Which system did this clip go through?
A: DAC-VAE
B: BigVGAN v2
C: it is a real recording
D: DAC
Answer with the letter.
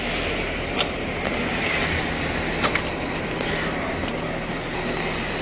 C